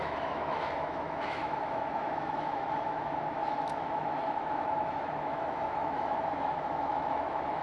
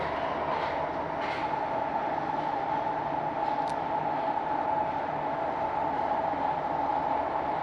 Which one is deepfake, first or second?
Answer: first